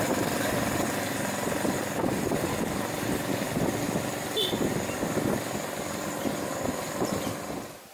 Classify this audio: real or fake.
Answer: real